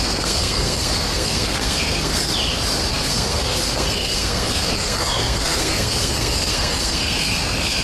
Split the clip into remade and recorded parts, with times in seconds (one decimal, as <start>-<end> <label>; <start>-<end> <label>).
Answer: 0.0-2.3 remade; 2.3-2.9 recorded; 2.9-7.8 remade